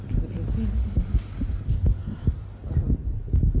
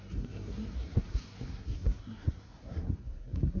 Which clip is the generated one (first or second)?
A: second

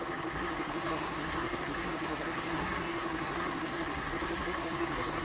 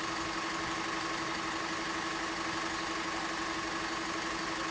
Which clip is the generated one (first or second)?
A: first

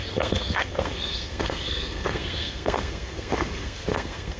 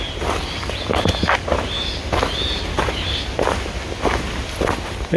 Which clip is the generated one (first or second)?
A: first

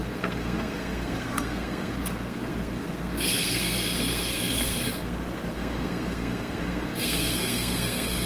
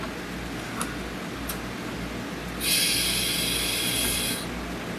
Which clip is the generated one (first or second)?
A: first